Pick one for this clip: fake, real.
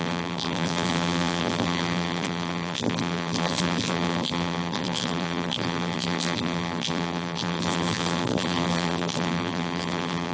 fake